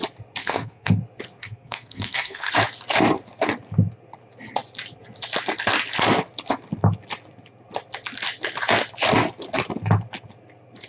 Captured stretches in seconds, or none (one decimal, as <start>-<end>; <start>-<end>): 0.0-0.4; 0.9-1.4; 2.5-10.9